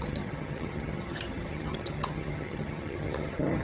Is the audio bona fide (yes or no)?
no